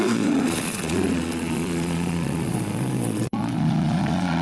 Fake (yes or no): yes